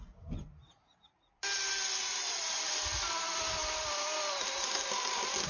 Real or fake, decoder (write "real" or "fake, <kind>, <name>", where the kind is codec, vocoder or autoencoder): real